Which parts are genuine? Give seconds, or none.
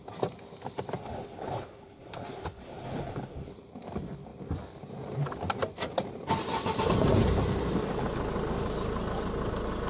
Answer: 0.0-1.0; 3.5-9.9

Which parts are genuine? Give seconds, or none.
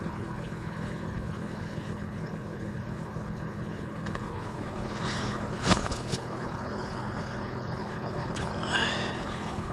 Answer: 8.5-9.1